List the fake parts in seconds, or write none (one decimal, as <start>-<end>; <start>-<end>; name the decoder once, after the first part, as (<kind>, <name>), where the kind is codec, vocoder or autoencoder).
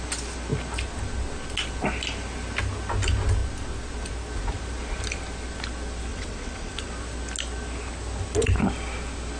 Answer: 6.1-6.9 (vocoder, WaveNeXt)